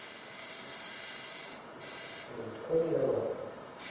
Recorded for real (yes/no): no